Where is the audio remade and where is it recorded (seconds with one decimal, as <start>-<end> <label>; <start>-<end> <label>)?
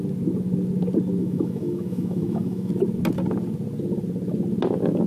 0.0-1.2 recorded; 1.2-2.7 remade; 2.7-5.1 recorded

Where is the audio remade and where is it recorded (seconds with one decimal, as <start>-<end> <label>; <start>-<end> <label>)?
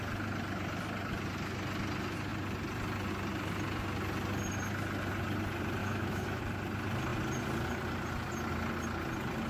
0.0-5.8 recorded; 5.8-6.4 remade; 6.4-9.5 recorded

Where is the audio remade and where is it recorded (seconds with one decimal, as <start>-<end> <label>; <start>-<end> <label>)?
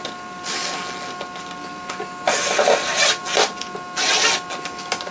0.0-5.1 recorded